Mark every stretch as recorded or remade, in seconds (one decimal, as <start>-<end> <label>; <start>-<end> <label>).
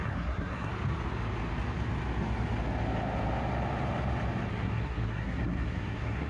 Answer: 0.0-0.7 remade; 0.7-4.5 recorded; 4.5-6.3 remade